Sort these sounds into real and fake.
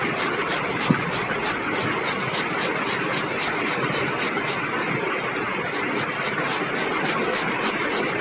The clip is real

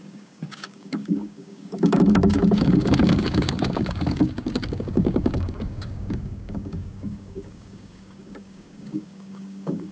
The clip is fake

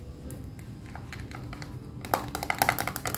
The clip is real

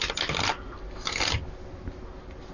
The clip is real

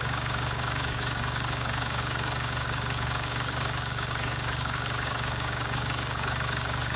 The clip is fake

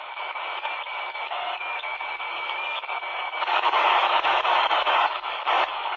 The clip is fake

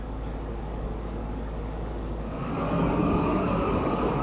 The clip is fake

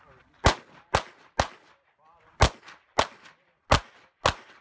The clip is real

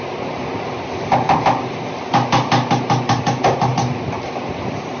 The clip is real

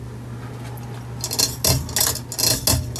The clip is real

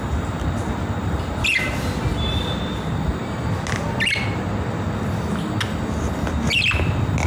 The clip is real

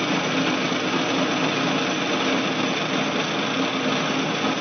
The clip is real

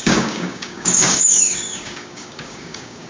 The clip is fake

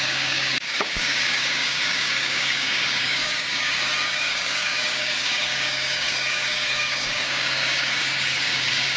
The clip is fake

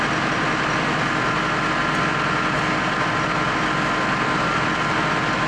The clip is real